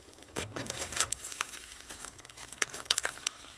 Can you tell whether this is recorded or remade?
remade